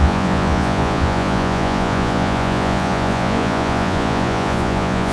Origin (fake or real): fake